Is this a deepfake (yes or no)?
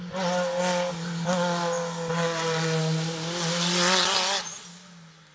no